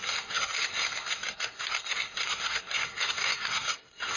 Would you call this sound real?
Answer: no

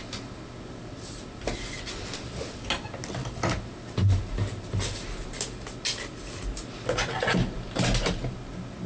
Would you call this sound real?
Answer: yes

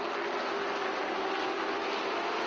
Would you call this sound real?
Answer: yes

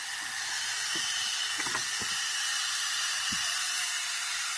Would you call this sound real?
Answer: yes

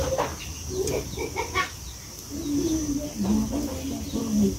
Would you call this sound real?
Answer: yes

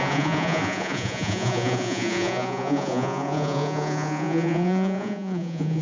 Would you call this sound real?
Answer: no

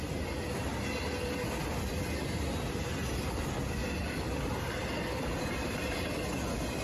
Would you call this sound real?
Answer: yes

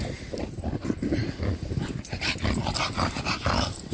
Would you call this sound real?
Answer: yes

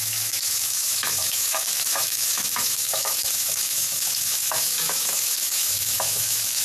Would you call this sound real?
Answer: no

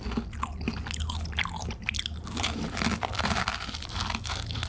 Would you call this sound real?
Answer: yes